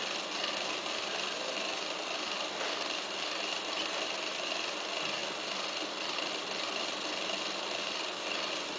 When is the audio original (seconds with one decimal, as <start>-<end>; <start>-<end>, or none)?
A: 0.0-8.8